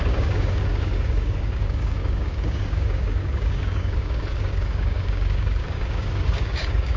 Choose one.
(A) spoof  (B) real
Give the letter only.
A